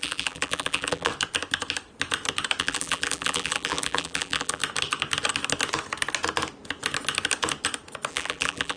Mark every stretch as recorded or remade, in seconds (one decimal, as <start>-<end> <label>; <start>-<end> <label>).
0.0-1.1 remade; 1.1-2.6 recorded; 2.6-4.6 remade; 4.6-8.1 recorded; 8.1-8.8 remade